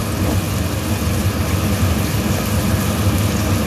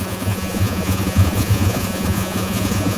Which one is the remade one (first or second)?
second